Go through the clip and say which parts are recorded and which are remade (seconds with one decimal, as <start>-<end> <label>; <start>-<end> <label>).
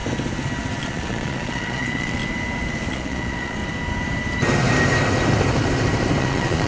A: 0.0-0.8 recorded; 0.8-2.2 remade; 2.2-2.9 recorded; 2.9-3.6 remade; 3.6-6.2 recorded; 6.2-6.7 remade